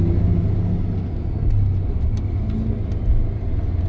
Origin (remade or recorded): recorded